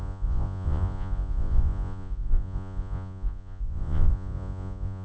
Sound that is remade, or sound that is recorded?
remade